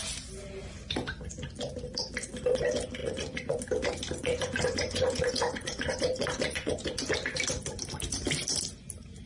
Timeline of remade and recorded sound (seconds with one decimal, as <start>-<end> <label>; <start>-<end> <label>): 0.0-3.0 recorded; 3.0-3.6 remade; 3.6-4.2 recorded; 4.2-6.7 remade; 6.7-9.3 recorded